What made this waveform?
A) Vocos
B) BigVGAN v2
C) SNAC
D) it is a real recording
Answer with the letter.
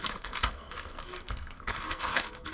C